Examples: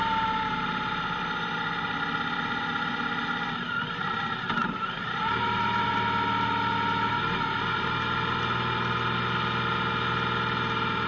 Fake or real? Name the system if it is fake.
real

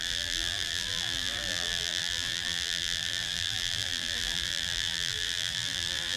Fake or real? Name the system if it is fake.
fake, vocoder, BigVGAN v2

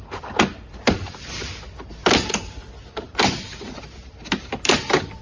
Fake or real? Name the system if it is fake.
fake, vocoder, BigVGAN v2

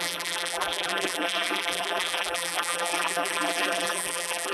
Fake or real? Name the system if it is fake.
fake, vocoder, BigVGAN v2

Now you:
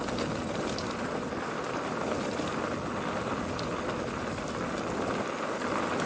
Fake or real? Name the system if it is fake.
real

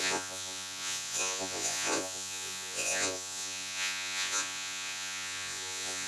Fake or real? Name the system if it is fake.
fake, vocoder, Vocos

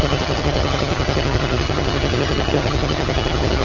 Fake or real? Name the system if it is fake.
fake, vocoder, HiFi-GAN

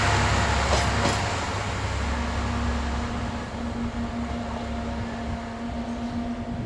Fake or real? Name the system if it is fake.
real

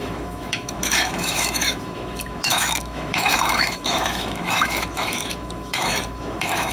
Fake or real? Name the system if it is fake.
fake, autoencoder, DAC-VAE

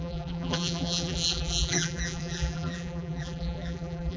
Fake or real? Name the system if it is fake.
fake, vocoder, BigVGAN v2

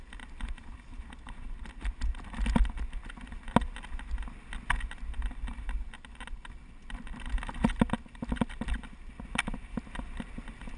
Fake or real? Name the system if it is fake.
real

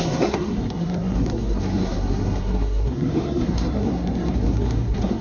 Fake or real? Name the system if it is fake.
fake, codec, SNAC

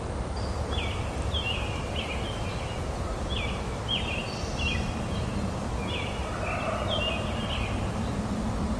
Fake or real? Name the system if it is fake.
real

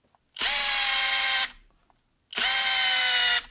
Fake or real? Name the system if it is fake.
real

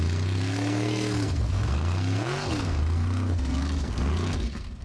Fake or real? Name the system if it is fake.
fake, codec, SNAC